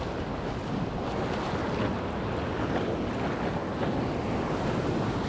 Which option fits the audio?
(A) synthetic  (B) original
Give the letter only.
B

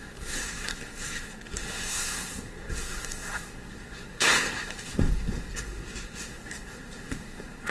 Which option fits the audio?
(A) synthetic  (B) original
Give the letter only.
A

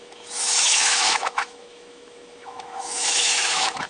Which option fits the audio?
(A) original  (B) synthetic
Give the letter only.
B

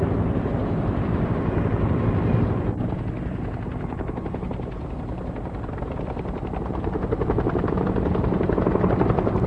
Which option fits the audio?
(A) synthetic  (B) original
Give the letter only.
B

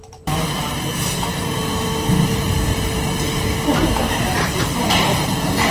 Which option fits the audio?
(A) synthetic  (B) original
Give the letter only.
A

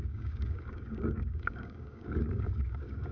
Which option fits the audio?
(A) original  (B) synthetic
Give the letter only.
B